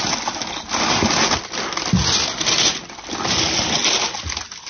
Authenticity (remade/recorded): recorded